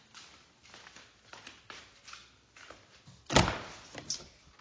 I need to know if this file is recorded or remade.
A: recorded